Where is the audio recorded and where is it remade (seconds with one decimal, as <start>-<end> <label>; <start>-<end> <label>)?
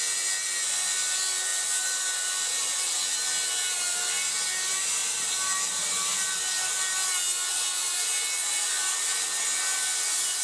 0.0-10.4 recorded